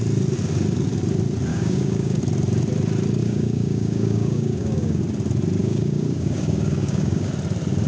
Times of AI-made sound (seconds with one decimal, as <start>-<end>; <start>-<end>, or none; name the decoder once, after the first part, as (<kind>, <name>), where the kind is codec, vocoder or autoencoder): 1.5-2.2 (codec, DAC); 3.2-5.0; 5.6-7.3

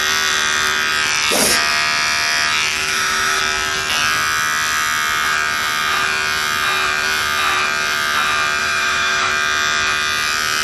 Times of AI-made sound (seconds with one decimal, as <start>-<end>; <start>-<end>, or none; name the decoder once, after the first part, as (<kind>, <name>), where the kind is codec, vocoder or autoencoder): 2.7-3.4 (autoencoder, DAC-VAE); 8.6-9.3

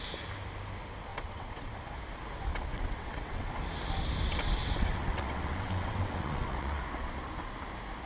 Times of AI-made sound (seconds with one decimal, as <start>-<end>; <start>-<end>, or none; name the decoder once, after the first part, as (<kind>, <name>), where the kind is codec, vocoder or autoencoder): 1.1-1.7 (vocoder, WaveNeXt); 2.5-3.5; 4.6-6.8

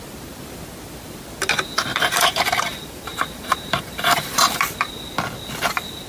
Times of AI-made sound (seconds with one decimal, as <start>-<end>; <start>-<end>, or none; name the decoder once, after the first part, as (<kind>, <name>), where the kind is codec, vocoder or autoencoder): 1.9-4.9 (vocoder, BigVGAN v2)

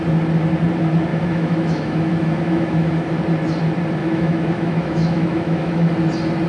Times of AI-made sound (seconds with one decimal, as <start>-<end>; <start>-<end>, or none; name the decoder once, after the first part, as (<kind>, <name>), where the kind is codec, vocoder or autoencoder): 1.1-3.2 (autoencoder, DAC-VAE); 4.0-5.9

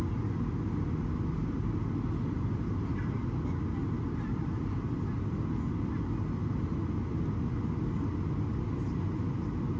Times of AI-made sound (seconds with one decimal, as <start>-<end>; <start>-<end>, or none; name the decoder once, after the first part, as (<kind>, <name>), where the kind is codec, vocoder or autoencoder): none

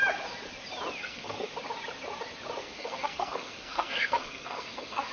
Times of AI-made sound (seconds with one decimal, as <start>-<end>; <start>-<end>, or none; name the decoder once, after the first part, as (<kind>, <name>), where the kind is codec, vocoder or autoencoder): 1.0-1.5 (codec, SNAC); 2.6-5.1

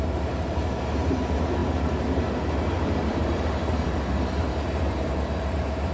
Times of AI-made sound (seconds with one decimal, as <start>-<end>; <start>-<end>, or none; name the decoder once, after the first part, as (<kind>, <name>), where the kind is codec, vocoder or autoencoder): 0.0-5.9 (vocoder, BigVGAN v2)